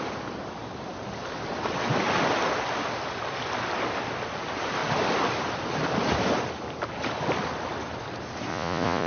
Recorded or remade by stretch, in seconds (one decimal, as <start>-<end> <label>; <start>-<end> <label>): 0.0-8.5 recorded; 8.5-9.1 remade